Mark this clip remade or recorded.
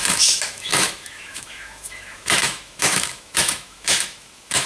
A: remade